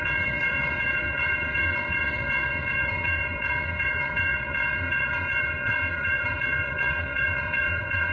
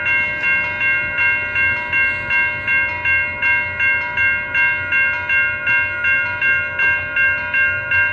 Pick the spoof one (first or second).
first